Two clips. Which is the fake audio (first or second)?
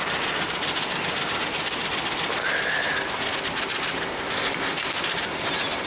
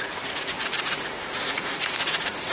second